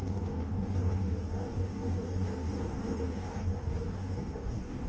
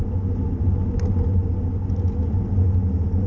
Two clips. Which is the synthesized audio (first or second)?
first